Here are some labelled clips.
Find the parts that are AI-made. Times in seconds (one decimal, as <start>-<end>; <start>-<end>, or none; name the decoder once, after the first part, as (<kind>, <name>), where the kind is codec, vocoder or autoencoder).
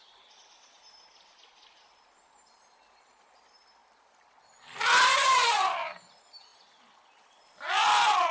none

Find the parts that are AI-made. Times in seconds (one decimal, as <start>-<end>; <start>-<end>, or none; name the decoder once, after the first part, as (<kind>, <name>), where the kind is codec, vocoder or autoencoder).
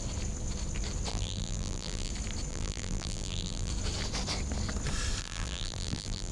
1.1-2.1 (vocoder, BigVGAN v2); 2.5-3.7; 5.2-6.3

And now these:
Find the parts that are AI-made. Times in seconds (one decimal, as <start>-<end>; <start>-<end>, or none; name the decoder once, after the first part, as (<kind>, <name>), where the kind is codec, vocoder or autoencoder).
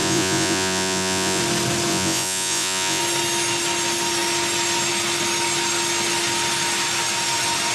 0.0-1.4 (vocoder, Vocos); 1.9-3.0